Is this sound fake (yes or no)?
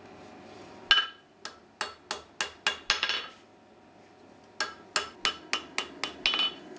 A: no